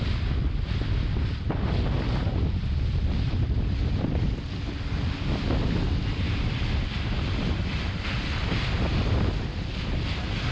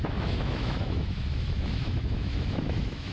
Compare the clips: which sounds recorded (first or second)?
first